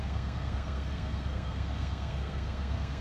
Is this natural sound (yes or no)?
no